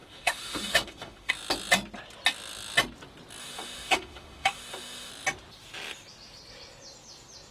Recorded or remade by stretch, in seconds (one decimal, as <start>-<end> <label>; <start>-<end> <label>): 0.0-1.3 remade; 1.3-3.4 recorded; 3.4-5.1 remade; 5.1-7.5 recorded